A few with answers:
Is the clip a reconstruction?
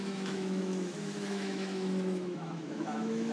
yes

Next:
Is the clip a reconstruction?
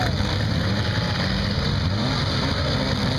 no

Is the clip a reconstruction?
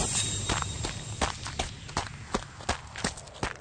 no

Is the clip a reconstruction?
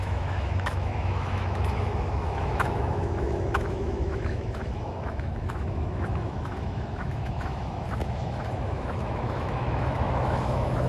yes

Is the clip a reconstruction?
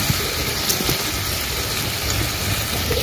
no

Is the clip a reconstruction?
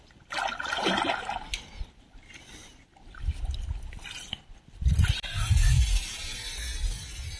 no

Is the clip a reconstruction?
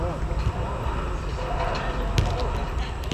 no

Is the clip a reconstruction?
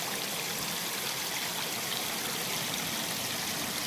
no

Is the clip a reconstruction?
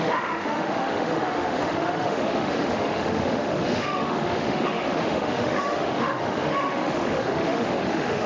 yes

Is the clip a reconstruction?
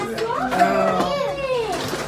no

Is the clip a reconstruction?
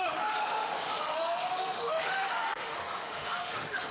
yes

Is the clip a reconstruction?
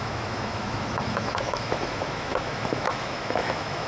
yes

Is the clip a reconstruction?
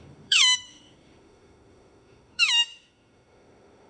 yes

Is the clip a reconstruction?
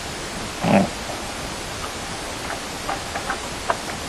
no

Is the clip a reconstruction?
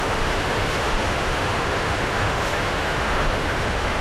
yes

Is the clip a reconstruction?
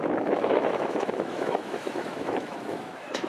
yes